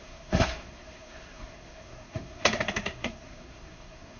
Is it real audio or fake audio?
fake